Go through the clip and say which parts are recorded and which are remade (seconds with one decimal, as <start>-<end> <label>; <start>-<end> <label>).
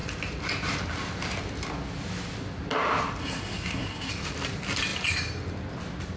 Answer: 0.0-3.2 recorded; 3.2-4.1 remade; 4.1-6.2 recorded